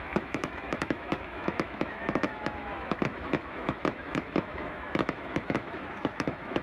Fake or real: fake